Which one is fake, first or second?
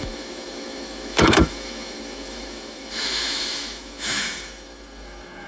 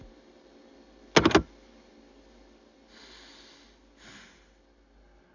first